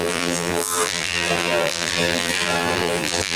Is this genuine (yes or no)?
no